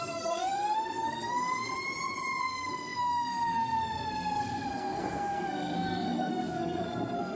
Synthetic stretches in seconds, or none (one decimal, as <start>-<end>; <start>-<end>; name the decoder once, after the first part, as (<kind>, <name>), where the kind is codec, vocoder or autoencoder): 0.0-1.7 (codec, SNAC); 2.4-7.4